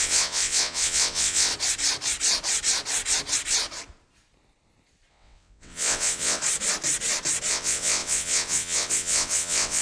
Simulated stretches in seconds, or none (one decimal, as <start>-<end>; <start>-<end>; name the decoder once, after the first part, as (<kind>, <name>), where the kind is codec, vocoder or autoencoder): 0.0-1.5 (vocoder, WaveNeXt); 5.1-6.4; 7.5-9.8